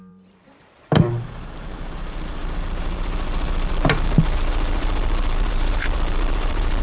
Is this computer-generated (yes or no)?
yes